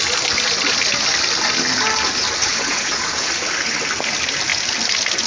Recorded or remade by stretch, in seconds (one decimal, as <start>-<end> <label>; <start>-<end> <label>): 0.0-2.4 recorded; 2.4-3.3 remade; 3.3-5.3 recorded